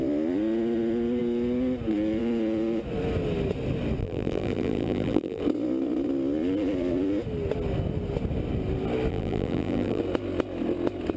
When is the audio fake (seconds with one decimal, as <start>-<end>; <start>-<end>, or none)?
4.0-5.4; 9.1-10.0